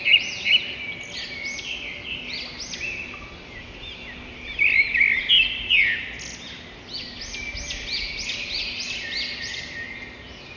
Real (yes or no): yes